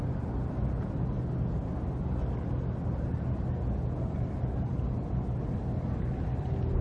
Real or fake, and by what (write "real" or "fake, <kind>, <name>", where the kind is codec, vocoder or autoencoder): real